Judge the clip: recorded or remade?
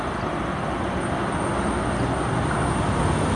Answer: recorded